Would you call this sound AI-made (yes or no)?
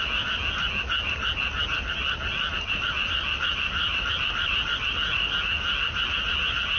no